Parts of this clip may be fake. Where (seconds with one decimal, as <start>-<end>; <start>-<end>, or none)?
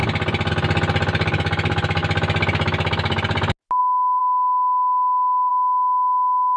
none